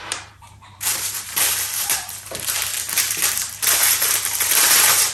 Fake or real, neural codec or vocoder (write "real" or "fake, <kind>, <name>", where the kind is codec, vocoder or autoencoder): fake, vocoder, BigVGAN v2